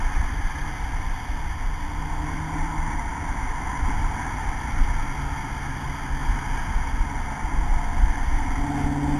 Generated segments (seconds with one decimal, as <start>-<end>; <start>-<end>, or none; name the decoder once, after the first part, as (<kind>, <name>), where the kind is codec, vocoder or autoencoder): 6.2-6.7 (vocoder, BigVGAN v2)